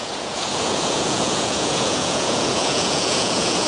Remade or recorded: remade